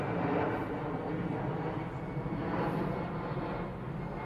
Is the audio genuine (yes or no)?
yes